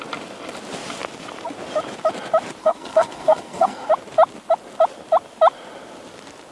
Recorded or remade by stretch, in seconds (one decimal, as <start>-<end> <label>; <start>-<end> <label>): 0.0-2.6 recorded; 2.6-3.9 remade; 3.9-6.5 recorded